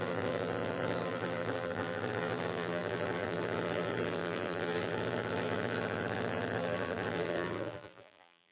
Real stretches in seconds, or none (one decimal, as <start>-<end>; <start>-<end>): none